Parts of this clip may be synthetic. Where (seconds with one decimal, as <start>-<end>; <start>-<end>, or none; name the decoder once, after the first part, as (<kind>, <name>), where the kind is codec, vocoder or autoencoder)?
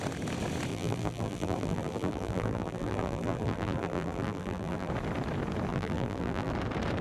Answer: 0.7-4.9 (vocoder, BigVGAN v2); 5.7-6.5